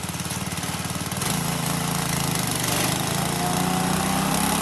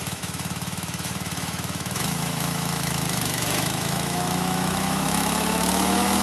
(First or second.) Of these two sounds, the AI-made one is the second